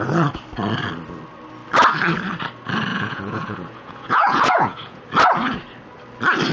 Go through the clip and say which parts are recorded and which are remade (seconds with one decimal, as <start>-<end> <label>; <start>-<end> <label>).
0.0-2.9 recorded; 2.9-5.0 remade; 5.0-6.5 recorded